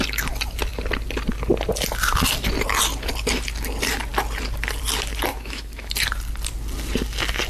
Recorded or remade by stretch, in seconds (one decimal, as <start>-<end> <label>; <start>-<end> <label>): 0.0-5.3 recorded; 5.3-5.9 remade; 5.9-7.5 recorded